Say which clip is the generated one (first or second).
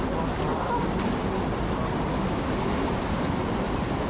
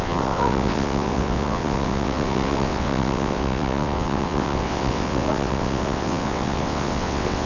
second